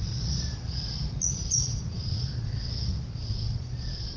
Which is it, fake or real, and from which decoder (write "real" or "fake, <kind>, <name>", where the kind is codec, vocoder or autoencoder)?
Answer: fake, vocoder, Vocos